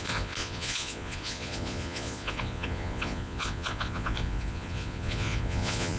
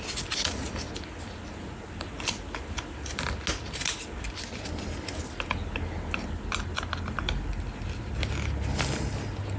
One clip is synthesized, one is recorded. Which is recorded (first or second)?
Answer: second